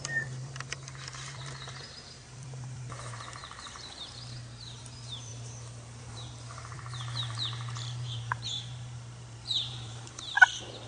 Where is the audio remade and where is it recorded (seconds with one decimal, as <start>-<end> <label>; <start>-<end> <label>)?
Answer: 0.0-5.3 remade; 5.3-6.0 recorded; 6.0-10.9 remade